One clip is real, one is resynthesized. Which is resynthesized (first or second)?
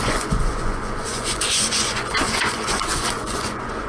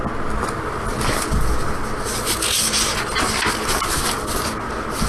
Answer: first